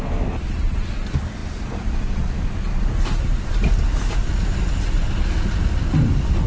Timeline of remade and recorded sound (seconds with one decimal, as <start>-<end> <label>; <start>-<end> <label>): 0.0-6.5 recorded